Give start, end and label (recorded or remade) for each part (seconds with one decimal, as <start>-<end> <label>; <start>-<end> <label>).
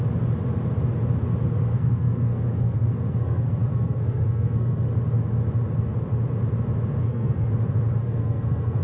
0.0-1.7 recorded; 1.7-4.9 remade; 4.9-7.0 recorded; 7.0-7.5 remade; 7.5-8.0 recorded; 8.0-8.8 remade